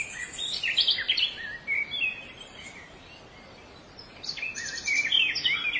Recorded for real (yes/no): yes